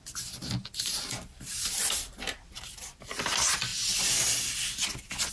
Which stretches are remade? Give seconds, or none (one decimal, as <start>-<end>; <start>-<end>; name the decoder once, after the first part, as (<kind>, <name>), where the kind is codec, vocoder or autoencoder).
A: 0.4-2.8 (vocoder, BigVGAN v2)